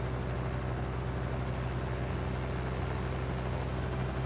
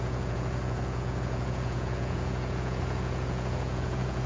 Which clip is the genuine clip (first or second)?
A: first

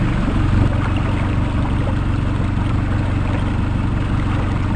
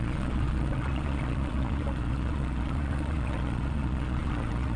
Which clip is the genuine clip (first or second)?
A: first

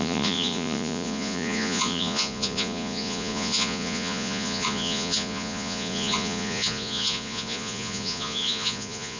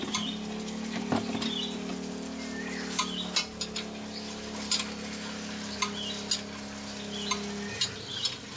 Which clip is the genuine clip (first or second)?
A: second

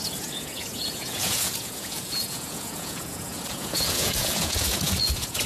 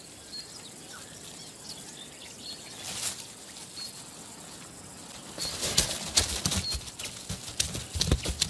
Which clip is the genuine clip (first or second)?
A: second